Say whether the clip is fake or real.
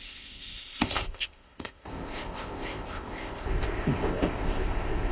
fake